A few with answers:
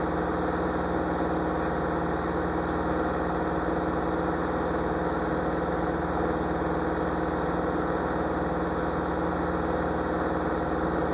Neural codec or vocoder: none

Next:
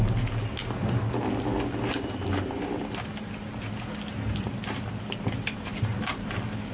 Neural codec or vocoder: none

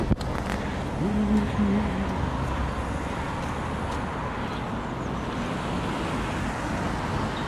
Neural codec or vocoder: none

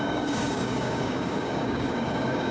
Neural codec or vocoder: codec, DAC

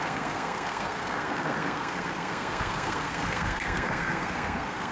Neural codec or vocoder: codec, SNAC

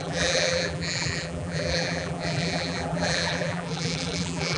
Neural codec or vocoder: vocoder, BigVGAN v2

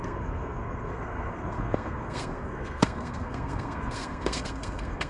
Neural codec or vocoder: codec, SNAC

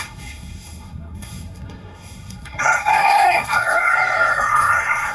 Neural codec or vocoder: codec, SNAC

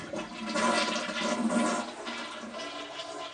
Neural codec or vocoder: none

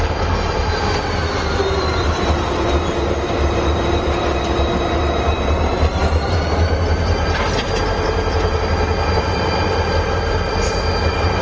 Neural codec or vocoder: vocoder, BigVGAN v2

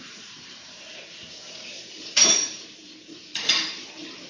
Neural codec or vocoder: vocoder, BigVGAN v2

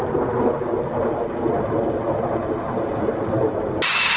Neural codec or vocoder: none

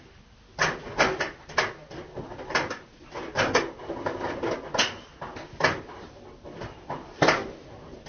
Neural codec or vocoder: none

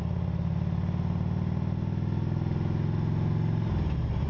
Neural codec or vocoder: none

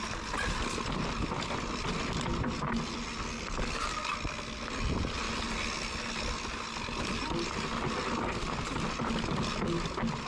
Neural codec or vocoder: none